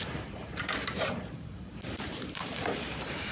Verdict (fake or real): fake